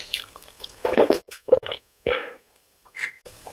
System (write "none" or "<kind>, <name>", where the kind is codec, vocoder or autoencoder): codec, SNAC